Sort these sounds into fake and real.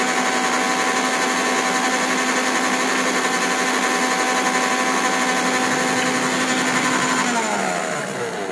real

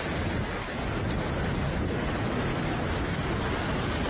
real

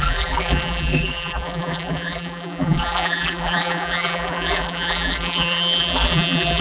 fake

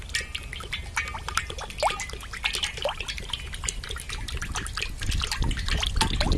real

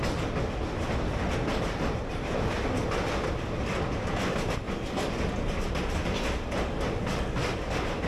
real